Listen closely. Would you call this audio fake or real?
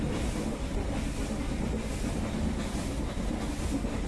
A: real